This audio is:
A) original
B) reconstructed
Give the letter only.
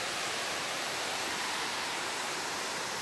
B